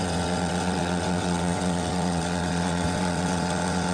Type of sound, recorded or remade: remade